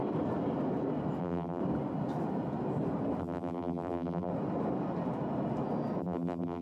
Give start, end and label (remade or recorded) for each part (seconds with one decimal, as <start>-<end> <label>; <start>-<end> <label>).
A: 0.0-1.2 recorded; 1.2-1.6 remade; 1.6-3.2 recorded; 3.2-4.3 remade; 4.3-6.0 recorded; 6.0-6.6 remade